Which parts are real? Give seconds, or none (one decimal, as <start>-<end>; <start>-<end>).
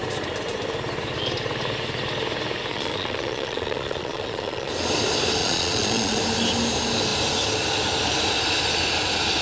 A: 0.0-2.7; 4.7-5.4; 6.2-9.4